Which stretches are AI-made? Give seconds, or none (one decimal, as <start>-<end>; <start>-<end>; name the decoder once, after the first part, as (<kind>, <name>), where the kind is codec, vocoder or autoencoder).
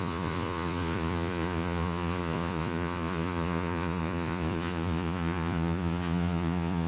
0.0-6.9 (vocoder, Vocos)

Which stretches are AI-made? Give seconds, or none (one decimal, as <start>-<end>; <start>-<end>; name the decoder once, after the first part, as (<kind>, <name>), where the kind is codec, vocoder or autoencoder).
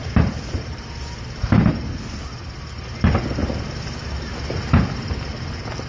none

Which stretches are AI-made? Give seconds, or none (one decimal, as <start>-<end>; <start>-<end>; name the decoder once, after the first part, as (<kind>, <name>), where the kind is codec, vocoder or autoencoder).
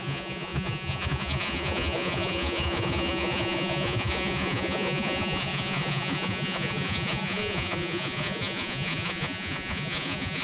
0.0-10.4 (vocoder, Vocos)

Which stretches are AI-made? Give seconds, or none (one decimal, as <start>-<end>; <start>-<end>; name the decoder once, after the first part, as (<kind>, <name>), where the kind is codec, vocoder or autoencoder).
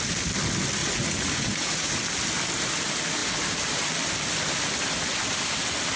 0.8-2.0 (vocoder, Vocos)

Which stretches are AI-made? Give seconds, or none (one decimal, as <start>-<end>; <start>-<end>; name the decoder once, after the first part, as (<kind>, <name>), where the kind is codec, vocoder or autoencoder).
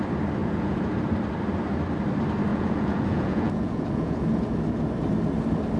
0.4-0.9 (vocoder, Vocos); 2.5-4.4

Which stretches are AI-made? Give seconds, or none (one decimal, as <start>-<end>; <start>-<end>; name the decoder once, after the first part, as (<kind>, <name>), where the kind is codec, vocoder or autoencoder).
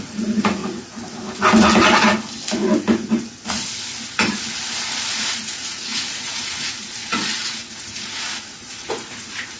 0.0-0.6 (vocoder, Vocos); 5.1-9.6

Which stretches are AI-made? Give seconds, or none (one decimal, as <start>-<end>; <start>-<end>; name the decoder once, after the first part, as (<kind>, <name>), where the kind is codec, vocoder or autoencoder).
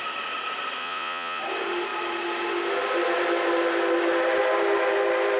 0.8-1.4 (vocoder, Vocos)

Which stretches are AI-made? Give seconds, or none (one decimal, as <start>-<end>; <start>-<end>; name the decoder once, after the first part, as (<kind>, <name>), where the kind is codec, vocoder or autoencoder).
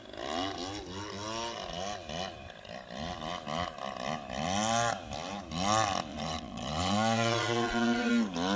6.1-8.1 (vocoder, Vocos)